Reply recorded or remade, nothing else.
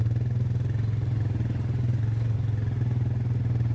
recorded